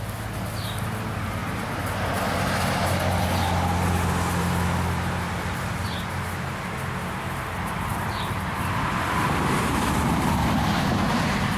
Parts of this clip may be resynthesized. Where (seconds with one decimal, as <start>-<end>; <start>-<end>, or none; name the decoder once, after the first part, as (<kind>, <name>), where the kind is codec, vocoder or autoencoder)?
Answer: none